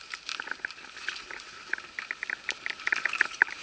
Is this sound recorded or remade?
recorded